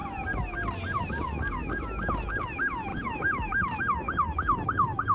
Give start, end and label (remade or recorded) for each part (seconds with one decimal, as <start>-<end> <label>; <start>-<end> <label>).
0.0-2.9 recorded; 2.9-3.8 remade; 3.8-5.1 recorded